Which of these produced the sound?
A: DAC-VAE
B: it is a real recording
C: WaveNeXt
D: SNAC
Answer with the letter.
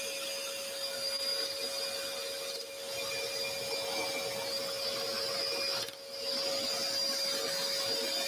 B